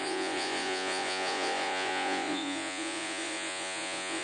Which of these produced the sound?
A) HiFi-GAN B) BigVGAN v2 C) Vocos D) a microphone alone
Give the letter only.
C